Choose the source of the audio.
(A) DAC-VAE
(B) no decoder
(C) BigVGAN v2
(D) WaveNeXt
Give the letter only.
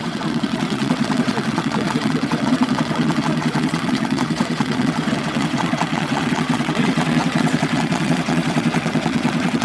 D